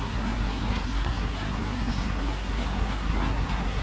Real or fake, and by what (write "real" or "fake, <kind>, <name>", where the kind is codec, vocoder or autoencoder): fake, codec, SNAC